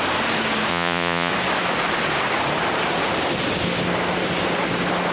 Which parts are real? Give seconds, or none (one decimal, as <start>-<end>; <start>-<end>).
0.0-0.7; 1.3-5.1